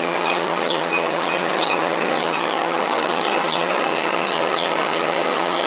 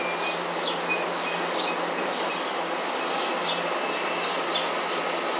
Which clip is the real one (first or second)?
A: second